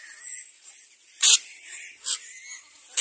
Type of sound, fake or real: real